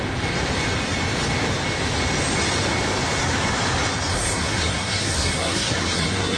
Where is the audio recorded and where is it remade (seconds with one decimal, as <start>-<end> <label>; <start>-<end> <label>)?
0.0-4.1 recorded; 4.1-6.4 remade